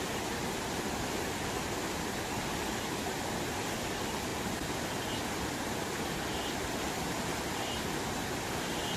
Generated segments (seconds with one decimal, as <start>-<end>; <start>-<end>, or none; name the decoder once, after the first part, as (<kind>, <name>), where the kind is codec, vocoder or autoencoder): 4.3-8.1 (vocoder, BigVGAN v2)

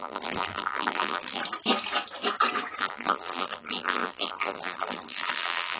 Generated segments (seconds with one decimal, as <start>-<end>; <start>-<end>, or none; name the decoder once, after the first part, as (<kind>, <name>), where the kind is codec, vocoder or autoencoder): 0.0-1.4 (vocoder, BigVGAN v2); 2.8-5.8

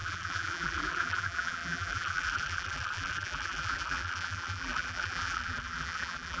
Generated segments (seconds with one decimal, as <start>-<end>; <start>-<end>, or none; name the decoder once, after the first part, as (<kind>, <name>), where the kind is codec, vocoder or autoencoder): 0.0-6.4 (vocoder, BigVGAN v2)

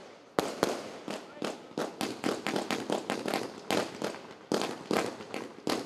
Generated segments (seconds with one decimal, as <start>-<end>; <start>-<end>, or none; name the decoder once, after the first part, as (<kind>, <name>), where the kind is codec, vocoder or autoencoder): none